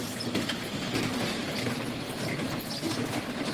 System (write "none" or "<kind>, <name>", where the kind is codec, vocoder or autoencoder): none